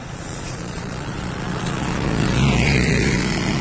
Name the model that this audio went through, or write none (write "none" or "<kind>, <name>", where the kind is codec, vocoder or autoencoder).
vocoder, Vocos